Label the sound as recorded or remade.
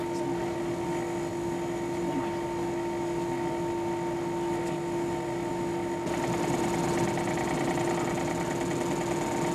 recorded